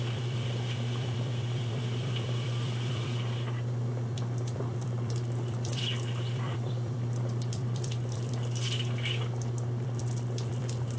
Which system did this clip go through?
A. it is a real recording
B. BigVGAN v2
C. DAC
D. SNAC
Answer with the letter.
B